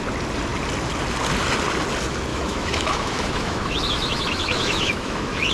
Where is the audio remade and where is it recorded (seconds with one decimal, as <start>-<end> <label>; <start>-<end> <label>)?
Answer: 0.0-2.3 recorded; 2.3-5.5 remade